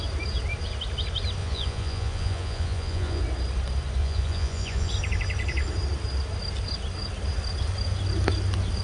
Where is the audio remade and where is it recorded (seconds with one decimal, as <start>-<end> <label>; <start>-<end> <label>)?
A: 0.0-1.4 recorded; 1.4-3.2 remade; 3.2-4.0 recorded; 4.0-4.9 remade; 4.9-8.8 recorded